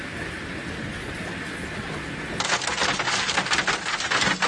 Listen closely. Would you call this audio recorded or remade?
recorded